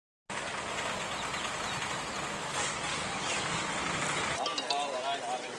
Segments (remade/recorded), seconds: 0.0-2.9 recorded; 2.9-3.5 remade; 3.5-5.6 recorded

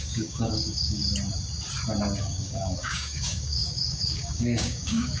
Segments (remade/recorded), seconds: 0.0-1.0 remade; 1.0-2.2 recorded; 2.2-5.2 remade

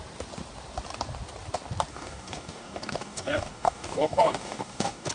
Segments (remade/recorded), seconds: 0.0-1.9 recorded; 1.9-5.1 remade